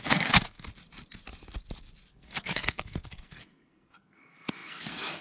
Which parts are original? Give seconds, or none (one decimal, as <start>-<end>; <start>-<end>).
0.7-2.1